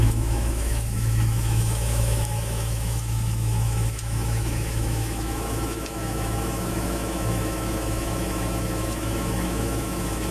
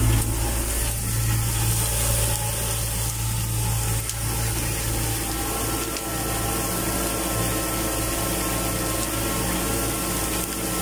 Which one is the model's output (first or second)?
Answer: first